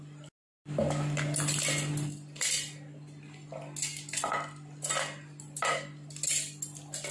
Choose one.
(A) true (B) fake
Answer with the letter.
A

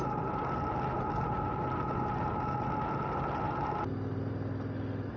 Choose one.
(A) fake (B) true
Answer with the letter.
B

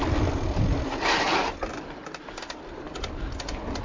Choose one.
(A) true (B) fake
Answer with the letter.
A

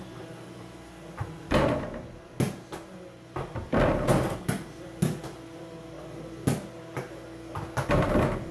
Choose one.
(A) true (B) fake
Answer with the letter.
A